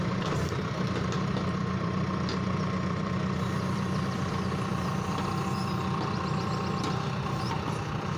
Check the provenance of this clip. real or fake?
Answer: fake